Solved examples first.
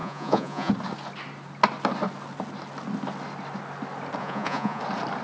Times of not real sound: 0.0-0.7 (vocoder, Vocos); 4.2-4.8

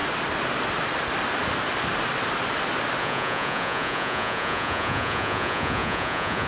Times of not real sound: 3.0-6.5 (vocoder, Vocos)

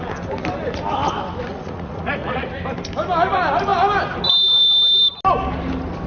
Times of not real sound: 1.5-2.5 (vocoder, Vocos)